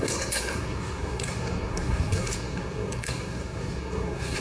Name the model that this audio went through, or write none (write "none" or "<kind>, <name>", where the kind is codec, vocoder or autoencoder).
codec, SNAC